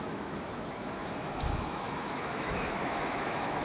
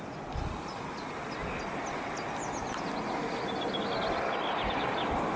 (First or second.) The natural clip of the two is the second